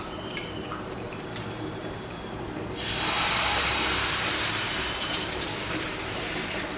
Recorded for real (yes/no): no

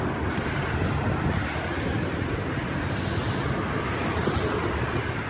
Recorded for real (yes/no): yes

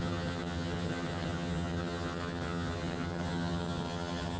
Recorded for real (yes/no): no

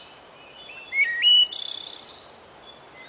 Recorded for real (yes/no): yes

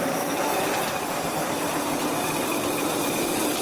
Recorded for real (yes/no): no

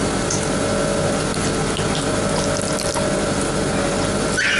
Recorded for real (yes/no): yes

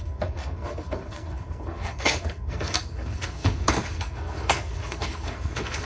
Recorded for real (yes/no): no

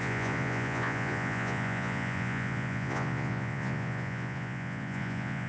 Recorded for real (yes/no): no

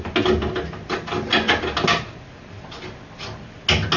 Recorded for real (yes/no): yes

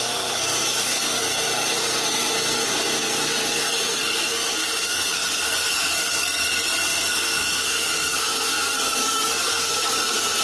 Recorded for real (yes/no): no